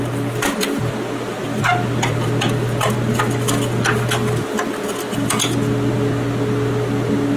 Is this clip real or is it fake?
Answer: real